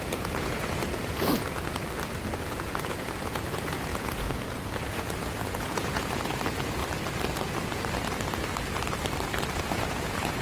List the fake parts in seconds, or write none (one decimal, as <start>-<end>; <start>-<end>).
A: 0.0-1.8; 2.4-6.8; 9.5-10.4